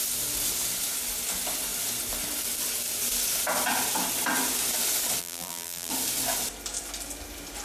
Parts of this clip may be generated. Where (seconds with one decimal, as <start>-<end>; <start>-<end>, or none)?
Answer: 5.2-5.9